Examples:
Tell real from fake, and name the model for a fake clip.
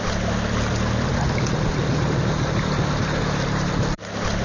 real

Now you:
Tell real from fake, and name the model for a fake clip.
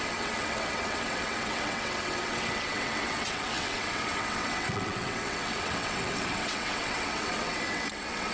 fake, vocoder, WaveNeXt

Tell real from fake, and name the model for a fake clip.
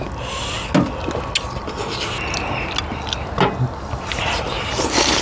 real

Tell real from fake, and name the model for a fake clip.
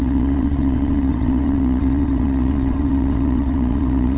fake, vocoder, WaveNeXt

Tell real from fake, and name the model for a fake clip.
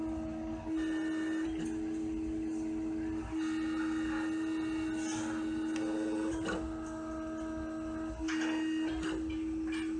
real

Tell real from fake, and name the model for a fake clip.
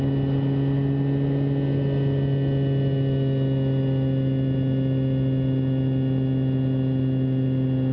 real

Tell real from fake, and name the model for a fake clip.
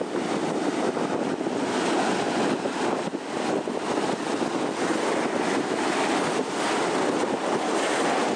real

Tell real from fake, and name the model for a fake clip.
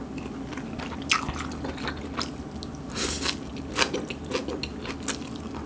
real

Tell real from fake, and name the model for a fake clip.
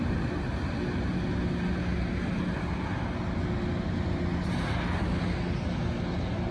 real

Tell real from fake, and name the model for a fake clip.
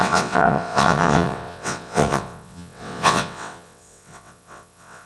fake, vocoder, WaveNeXt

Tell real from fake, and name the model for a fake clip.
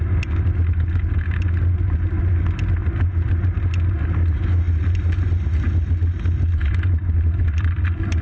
real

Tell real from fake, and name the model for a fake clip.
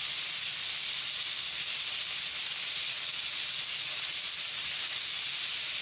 real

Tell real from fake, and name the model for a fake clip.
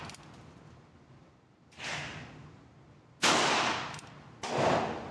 real